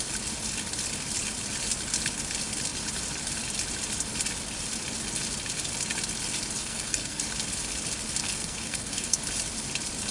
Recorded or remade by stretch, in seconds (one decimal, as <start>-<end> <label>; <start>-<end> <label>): 0.0-6.6 recorded; 6.6-7.2 remade; 7.2-8.2 recorded; 8.2-9.2 remade; 9.2-10.1 recorded